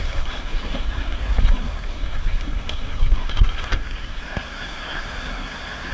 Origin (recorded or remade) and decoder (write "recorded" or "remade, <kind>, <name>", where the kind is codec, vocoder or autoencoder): remade, codec, SNAC